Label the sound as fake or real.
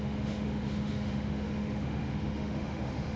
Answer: fake